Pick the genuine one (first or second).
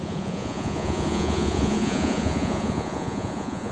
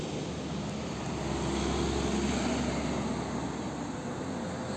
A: second